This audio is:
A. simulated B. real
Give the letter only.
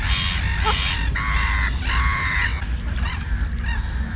B